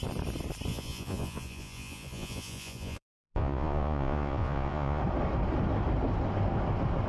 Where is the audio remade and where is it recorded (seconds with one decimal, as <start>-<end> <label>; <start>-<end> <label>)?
0.0-0.7 recorded; 0.7-5.0 remade; 5.0-7.1 recorded